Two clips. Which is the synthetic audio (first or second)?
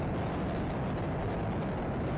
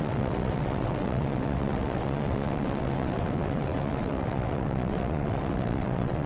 second